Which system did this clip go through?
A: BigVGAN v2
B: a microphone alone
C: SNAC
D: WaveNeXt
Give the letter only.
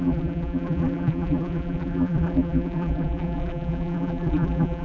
A